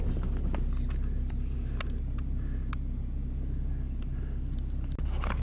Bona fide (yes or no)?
yes